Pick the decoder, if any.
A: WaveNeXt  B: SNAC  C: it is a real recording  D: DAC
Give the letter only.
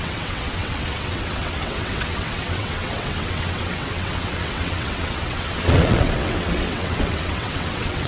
A